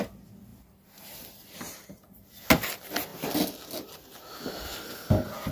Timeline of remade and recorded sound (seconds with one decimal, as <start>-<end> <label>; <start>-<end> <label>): 0.0-5.5 recorded